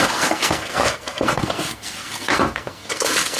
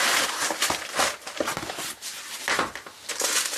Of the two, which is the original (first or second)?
second